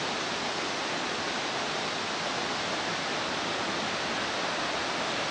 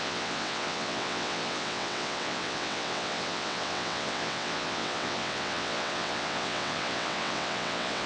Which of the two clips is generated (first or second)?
second